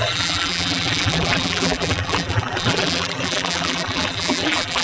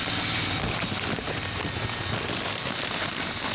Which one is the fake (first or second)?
first